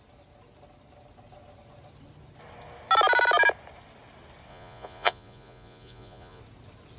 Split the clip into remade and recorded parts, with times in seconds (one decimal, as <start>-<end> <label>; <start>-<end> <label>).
0.0-4.5 recorded; 4.5-6.4 remade; 6.4-7.0 recorded